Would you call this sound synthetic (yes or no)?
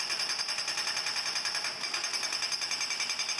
no